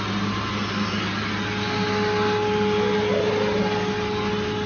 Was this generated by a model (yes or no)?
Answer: no